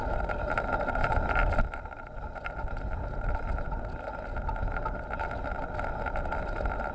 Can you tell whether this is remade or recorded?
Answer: recorded